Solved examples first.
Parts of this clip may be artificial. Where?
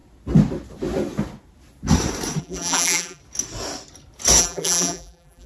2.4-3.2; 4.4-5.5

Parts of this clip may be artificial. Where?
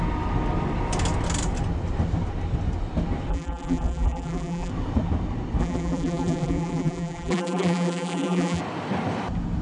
3.3-4.7; 5.6-8.6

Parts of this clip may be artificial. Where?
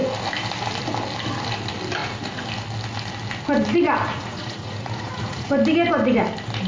4.1-5.5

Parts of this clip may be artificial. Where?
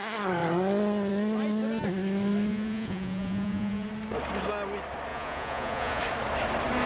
2.5-3.9; 5.1-6.0